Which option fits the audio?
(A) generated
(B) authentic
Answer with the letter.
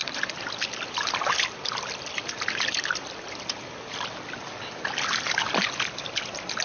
B